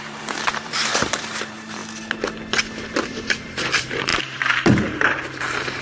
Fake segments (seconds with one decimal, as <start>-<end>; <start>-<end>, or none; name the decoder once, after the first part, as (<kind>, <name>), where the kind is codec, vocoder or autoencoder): 0.0-1.8 (vocoder, BigVGAN v2); 3.0-5.8